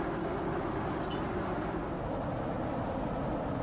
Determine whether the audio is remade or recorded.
recorded